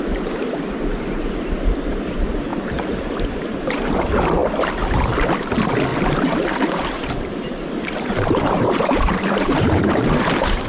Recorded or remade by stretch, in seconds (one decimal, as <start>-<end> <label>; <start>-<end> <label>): 0.0-0.9 recorded; 0.9-2.0 remade; 2.0-2.5 recorded; 2.5-3.9 remade; 3.9-5.9 recorded; 5.9-10.7 remade